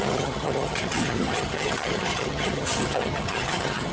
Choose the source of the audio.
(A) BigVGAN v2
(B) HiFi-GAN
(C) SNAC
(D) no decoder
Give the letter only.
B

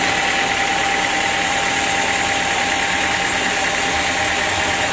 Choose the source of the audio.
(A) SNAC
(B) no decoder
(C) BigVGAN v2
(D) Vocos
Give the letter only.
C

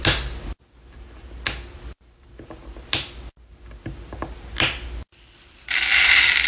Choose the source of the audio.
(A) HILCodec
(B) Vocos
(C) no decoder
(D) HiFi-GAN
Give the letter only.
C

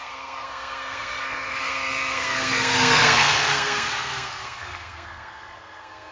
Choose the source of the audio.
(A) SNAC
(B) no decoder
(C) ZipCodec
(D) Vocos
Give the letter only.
A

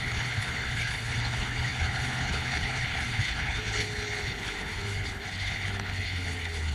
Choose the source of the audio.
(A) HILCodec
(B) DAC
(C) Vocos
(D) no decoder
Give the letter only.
A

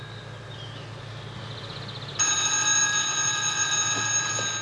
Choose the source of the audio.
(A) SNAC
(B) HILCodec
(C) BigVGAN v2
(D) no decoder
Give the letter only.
D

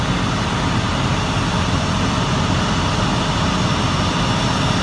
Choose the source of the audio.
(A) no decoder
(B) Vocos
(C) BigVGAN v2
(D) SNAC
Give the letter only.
A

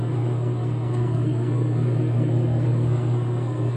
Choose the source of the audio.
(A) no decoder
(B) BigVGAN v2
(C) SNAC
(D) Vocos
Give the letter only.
C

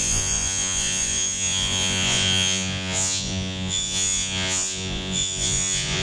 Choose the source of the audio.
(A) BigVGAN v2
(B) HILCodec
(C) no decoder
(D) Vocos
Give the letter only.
D